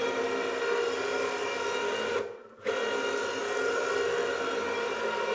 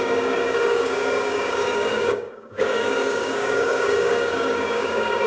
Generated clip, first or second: second